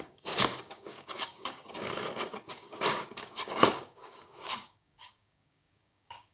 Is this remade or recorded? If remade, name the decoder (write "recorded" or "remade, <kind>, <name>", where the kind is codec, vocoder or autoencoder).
remade, codec, DAC